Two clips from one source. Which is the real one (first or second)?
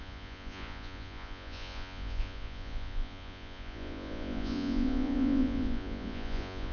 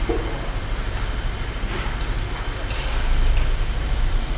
second